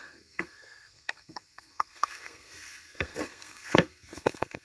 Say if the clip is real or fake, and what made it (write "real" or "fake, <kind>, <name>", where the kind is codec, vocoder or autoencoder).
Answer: fake, codec, SNAC